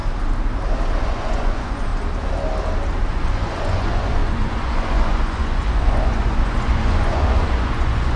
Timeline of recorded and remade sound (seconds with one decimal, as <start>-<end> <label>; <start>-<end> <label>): 0.0-1.0 recorded; 1.0-1.9 remade; 1.9-3.1 recorded; 3.1-8.2 remade